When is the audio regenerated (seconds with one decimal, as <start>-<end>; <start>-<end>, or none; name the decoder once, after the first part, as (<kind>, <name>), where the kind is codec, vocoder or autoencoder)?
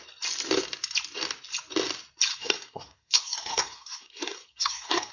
2.3-5.1 (codec, SNAC)